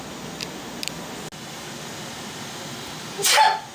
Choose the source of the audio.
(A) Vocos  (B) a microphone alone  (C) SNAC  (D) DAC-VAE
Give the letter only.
B